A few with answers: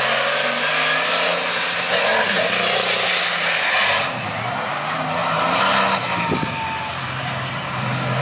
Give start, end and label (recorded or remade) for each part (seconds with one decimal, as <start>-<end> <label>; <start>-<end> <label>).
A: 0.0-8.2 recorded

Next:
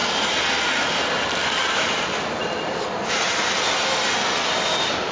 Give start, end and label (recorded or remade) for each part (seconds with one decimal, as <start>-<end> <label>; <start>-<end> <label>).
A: 0.0-5.1 recorded

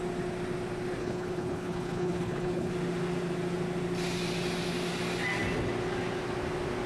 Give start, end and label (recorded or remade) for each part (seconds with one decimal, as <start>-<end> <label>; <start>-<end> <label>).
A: 0.0-1.0 recorded; 1.0-2.7 remade; 2.7-6.9 recorded